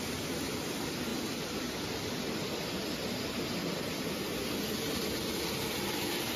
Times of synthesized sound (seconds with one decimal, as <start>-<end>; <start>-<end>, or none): none